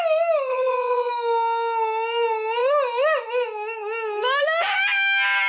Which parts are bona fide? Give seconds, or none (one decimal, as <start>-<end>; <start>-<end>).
0.0-0.5; 1.1-5.5